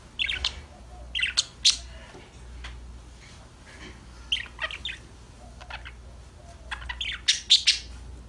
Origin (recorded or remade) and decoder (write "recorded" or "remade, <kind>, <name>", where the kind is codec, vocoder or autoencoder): recorded